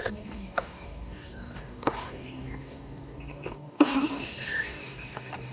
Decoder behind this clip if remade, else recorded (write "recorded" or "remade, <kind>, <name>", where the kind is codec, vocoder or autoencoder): remade, codec, DAC